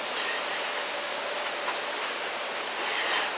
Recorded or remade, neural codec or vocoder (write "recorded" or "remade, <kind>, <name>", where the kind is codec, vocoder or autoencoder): recorded